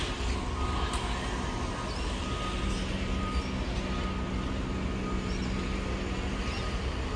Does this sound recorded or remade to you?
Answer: recorded